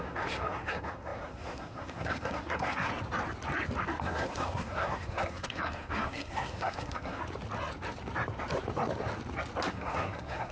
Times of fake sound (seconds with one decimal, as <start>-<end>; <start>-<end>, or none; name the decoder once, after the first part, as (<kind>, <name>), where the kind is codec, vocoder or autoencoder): 0.0-2.9 (codec, SNAC); 4.0-7.2; 9.7-10.5